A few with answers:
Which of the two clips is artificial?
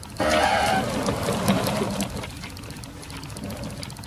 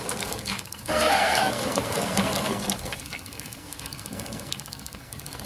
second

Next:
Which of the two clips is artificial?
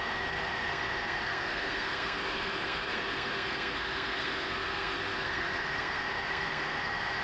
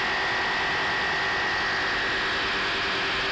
first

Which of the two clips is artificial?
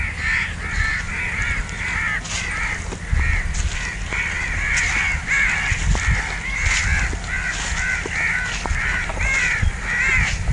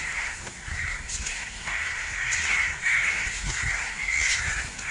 second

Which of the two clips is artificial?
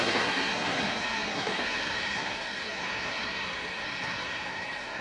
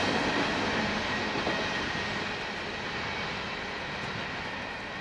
first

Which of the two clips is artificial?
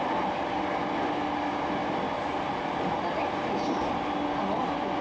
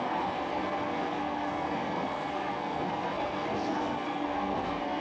second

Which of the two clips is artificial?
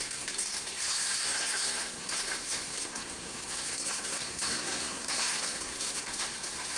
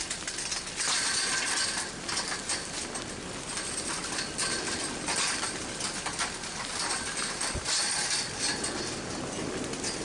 first